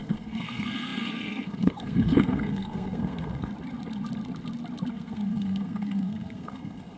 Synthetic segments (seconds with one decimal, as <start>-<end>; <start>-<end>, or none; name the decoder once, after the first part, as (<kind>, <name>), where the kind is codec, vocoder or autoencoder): 0.0-3.5 (codec, SNAC); 4.9-7.0